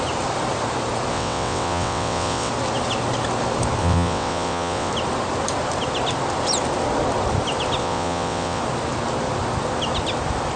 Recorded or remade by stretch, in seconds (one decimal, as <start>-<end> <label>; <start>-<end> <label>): 0.0-1.1 recorded; 1.1-2.5 remade; 2.5-3.8 recorded; 3.8-4.9 remade; 4.9-7.8 recorded; 7.8-8.6 remade; 8.6-10.6 recorded